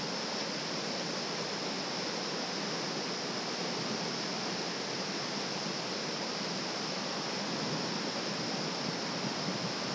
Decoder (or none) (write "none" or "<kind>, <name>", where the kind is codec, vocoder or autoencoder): none